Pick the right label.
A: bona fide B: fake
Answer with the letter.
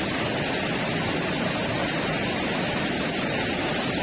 A